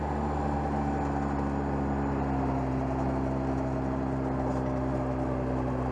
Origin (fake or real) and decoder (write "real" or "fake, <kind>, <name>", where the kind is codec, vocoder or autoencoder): real